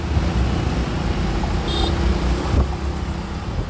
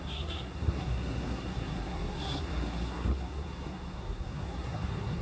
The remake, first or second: second